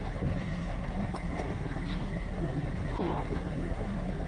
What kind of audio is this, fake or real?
fake